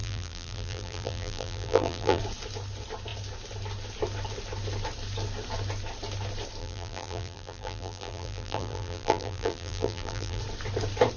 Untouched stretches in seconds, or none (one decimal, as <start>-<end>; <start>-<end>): 2.2-6.6; 10.4-11.2